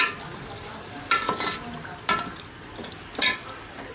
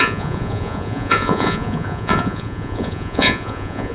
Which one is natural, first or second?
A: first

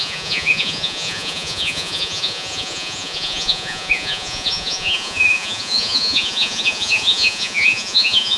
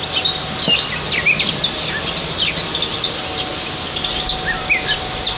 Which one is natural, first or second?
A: second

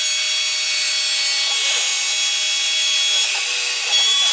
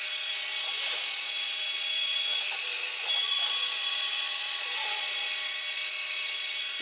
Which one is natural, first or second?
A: first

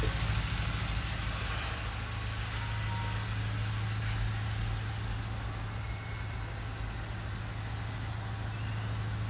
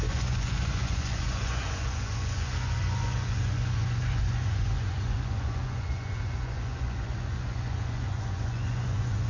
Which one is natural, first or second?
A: first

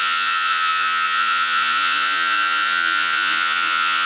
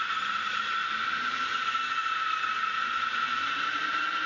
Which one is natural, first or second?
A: second